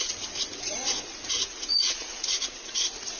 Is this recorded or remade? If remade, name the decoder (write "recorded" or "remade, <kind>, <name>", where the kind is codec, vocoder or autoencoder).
remade, vocoder, Vocos